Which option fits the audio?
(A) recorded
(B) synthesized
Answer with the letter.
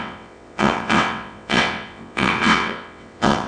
B